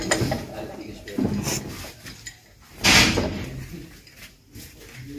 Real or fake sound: real